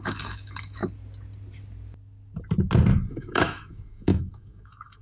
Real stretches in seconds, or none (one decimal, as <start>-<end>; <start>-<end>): 0.8-3.1